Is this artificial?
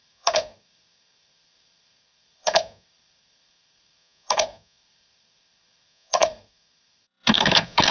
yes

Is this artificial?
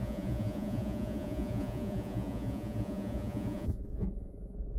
yes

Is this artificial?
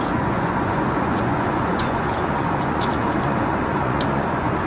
yes